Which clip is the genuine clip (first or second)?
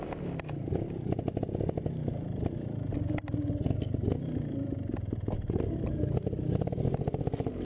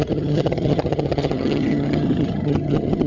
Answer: first